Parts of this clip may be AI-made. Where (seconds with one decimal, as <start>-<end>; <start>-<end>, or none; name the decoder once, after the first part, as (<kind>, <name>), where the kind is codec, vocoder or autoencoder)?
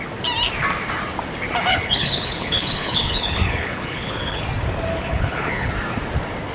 1.7-4.4 (codec, HILCodec); 4.9-5.7